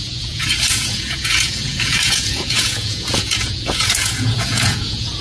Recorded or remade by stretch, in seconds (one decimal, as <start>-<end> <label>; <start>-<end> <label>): 0.0-5.2 remade